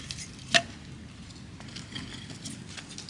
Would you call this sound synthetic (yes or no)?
no